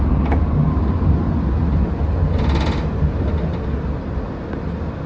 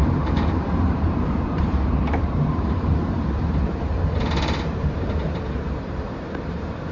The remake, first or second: second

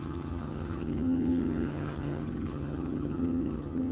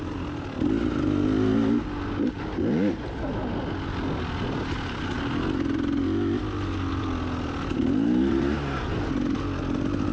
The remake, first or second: first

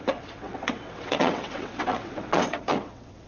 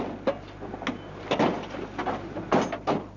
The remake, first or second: first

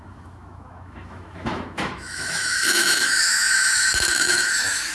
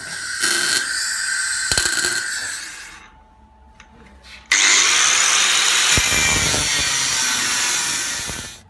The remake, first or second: first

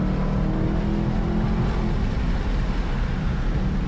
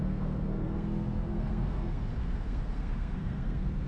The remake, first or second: second